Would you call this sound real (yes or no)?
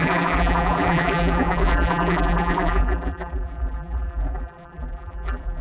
no